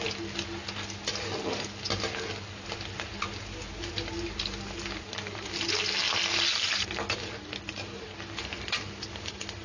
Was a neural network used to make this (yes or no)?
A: no